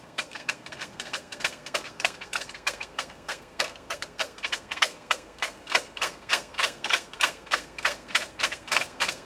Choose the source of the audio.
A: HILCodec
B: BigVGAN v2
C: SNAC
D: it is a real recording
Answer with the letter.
C